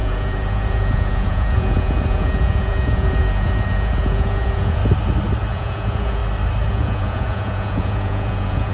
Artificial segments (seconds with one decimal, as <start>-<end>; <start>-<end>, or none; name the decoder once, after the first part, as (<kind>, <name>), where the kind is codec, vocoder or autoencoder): 0.0-4.8 (vocoder, Vocos); 5.5-6.2; 6.7-8.7